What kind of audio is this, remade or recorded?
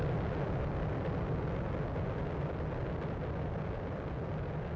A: recorded